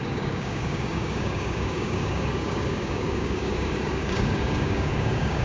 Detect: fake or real fake